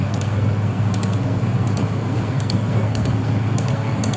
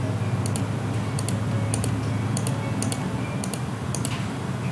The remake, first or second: first